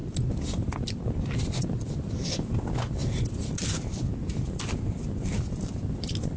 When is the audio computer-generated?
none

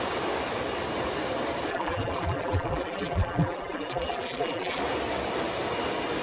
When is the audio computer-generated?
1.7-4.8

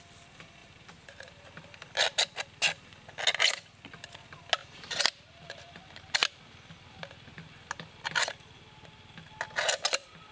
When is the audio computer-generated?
0.6-1.4; 4.6-5.8

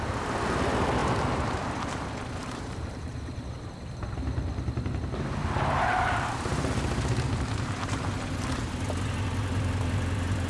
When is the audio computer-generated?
1.0-2.0; 2.4-3.1; 5.4-8.2

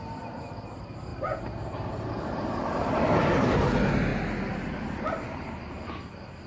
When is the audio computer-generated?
1.1-2.5; 4.1-6.0